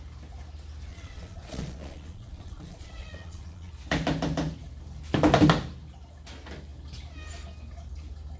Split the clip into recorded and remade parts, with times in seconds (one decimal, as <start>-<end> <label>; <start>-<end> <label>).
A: 0.0-0.9 recorded; 0.9-3.7 remade; 3.7-8.4 recorded